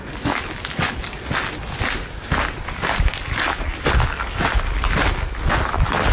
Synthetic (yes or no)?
no